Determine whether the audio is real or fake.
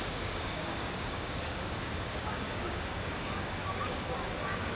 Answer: fake